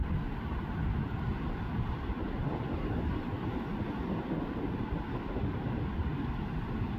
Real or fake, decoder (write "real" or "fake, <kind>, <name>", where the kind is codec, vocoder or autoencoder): real